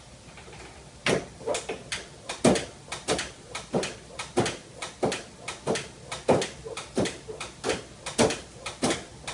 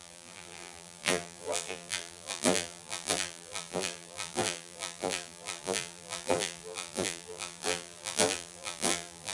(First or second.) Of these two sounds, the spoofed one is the second